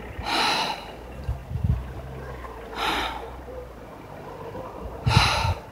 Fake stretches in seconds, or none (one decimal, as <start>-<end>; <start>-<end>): 1.4-4.8